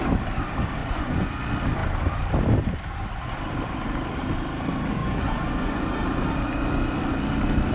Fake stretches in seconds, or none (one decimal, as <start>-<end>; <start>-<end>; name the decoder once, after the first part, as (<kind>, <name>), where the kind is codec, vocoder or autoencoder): 0.8-1.3 (vocoder, Vocos); 5.0-5.8